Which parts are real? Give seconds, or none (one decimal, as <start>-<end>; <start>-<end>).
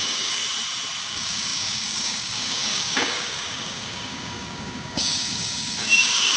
0.4-1.0